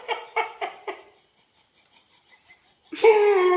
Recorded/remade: recorded